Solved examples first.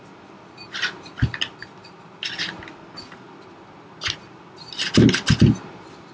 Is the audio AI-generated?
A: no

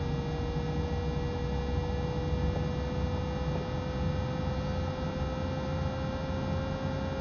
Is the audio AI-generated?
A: no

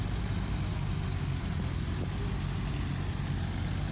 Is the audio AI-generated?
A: no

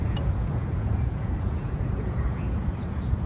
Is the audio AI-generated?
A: yes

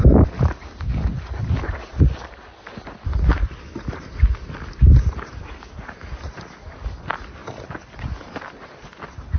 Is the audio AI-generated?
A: no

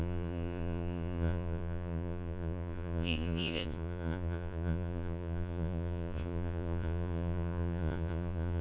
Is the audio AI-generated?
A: yes